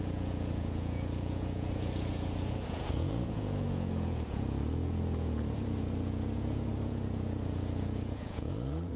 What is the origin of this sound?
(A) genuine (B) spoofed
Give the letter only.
B